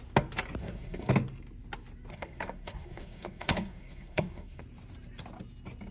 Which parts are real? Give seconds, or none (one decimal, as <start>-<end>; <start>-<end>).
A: 0.0-0.6; 1.1-2.1; 4.6-5.9

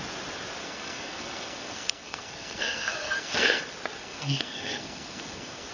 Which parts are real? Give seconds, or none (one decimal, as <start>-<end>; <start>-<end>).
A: 0.0-0.6; 3.6-4.0